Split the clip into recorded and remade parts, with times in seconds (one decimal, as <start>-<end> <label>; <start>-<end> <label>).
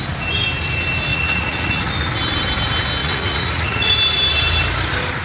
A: 0.0-1.1 recorded; 1.1-1.9 remade; 1.9-3.0 recorded; 3.0-3.9 remade; 3.9-5.2 recorded